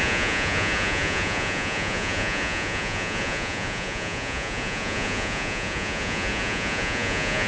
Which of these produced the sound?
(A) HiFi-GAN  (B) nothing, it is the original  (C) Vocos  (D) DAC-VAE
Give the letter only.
C